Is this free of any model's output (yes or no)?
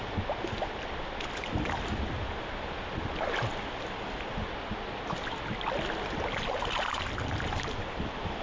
yes